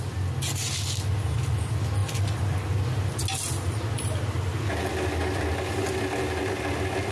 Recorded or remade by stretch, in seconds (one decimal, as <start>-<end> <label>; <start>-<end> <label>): 0.0-7.1 recorded